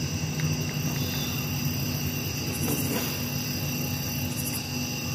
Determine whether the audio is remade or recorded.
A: recorded